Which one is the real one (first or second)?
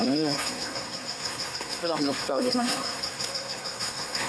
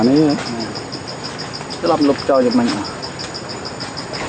second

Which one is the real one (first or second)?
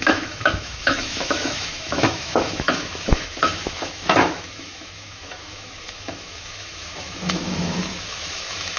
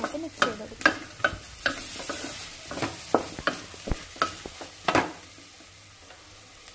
second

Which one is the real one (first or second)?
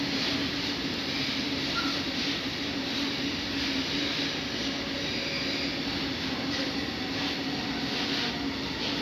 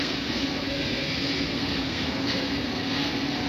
first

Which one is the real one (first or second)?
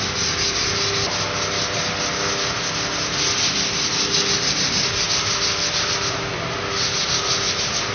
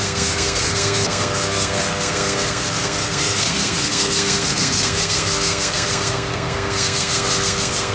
first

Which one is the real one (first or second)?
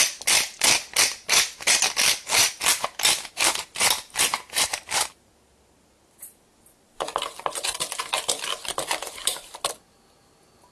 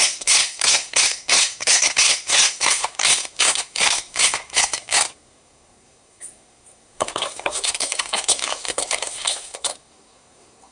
first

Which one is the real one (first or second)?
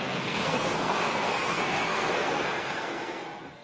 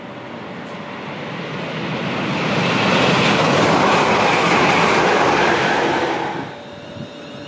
second